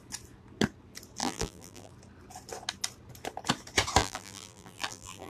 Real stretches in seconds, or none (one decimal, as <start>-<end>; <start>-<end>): 0.0-1.2; 1.9-4.0